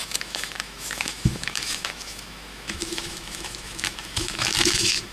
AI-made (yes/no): yes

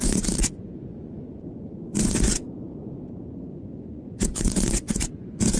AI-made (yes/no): yes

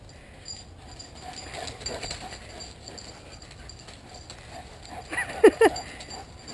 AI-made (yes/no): no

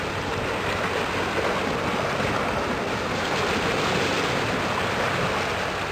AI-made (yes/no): no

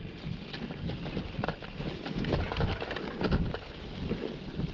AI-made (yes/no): no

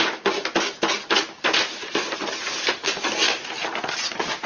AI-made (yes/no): no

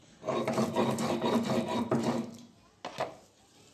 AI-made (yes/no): no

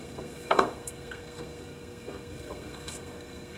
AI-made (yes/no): yes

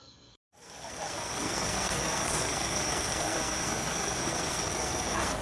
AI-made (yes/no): yes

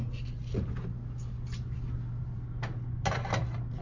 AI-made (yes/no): no